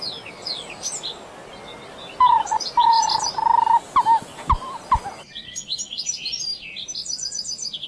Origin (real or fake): real